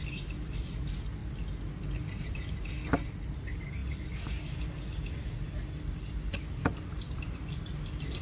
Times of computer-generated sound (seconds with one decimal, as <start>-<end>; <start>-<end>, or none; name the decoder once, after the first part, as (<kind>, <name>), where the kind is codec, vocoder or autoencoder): none